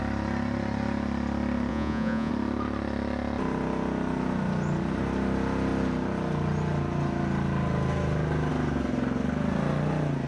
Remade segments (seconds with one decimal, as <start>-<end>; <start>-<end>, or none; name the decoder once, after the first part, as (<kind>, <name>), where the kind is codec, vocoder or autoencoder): 1.7-2.3 (vocoder, Vocos)